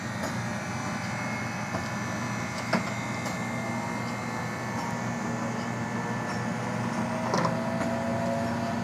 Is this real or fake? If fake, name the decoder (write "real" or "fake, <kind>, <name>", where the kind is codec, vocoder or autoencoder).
real